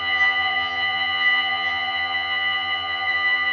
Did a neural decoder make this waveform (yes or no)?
yes